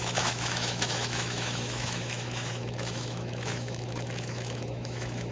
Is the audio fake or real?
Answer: fake